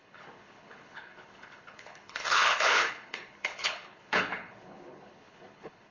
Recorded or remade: remade